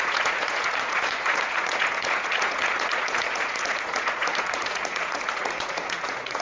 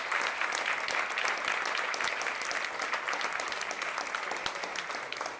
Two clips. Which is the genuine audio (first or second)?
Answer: second